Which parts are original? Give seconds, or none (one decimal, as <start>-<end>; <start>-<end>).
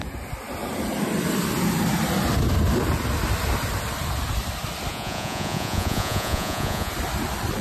0.0-4.9; 6.9-7.6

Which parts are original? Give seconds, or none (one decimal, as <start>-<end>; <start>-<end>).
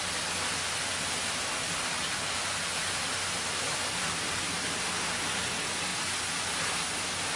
0.0-7.4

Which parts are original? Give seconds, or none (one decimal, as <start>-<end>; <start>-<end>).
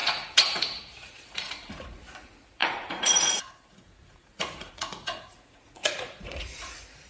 none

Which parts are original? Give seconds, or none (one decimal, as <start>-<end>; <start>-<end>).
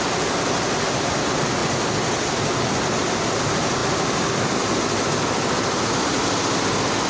0.0-7.1